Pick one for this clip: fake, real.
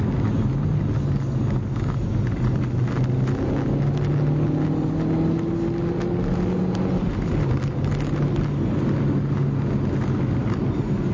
real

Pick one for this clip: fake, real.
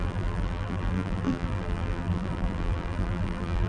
fake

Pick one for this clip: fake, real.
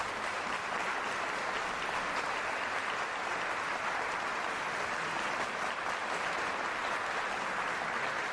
real